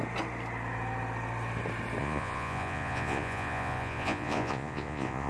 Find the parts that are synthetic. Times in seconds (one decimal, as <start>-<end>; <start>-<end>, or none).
2.0-5.3